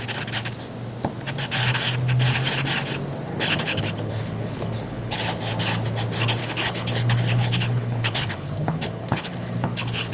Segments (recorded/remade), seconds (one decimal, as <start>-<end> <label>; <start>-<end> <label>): 0.0-3.3 recorded; 3.3-5.2 remade; 5.2-6.4 recorded; 6.4-10.1 remade